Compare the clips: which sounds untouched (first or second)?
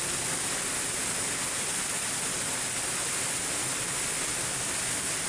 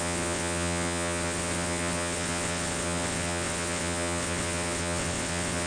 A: first